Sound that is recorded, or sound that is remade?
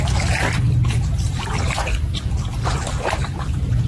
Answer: recorded